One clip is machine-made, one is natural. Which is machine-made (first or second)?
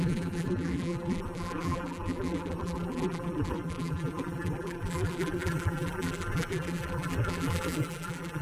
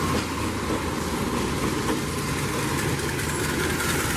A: first